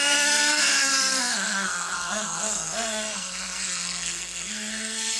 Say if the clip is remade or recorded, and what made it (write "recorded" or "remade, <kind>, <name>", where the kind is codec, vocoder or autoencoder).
remade, codec, SNAC